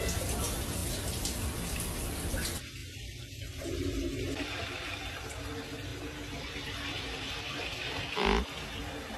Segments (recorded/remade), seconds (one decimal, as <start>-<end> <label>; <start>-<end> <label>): 0.0-9.2 recorded